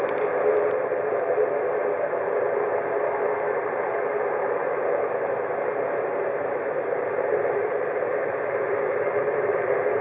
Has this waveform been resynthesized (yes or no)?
yes